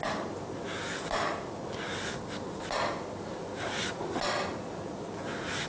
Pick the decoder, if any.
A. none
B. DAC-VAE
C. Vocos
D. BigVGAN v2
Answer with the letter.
A